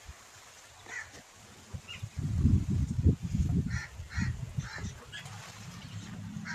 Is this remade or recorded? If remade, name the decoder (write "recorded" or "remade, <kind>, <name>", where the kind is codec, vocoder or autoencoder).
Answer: recorded